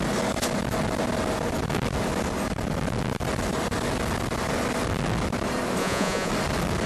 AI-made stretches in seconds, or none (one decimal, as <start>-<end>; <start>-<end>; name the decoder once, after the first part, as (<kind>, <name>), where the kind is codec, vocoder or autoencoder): 5.8-6.3 (vocoder, Vocos)